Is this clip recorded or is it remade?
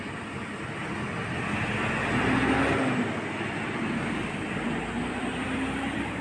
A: recorded